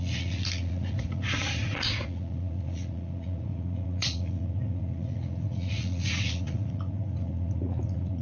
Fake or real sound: fake